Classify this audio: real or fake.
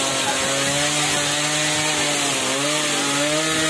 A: real